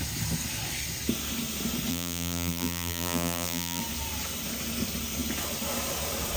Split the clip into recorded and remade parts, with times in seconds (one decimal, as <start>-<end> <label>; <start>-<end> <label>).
0.0-1.9 recorded; 1.9-3.8 remade; 3.8-6.4 recorded